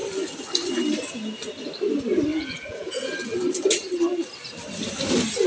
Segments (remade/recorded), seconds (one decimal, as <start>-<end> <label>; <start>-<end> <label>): 0.0-2.3 recorded; 2.3-3.1 remade; 3.1-5.5 recorded